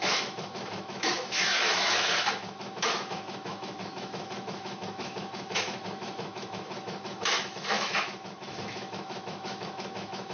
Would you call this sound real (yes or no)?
no